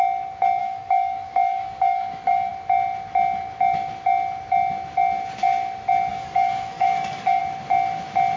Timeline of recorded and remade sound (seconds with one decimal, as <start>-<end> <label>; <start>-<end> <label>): 0.0-0.6 recorded; 0.6-2.5 remade; 2.5-6.1 recorded; 6.1-7.4 remade; 7.4-8.4 recorded